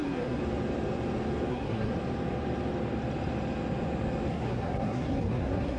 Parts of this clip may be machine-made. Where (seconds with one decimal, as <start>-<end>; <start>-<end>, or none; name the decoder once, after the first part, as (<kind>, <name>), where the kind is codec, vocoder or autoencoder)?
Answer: 0.0-0.4 (codec, SNAC); 1.5-1.9; 4.3-5.8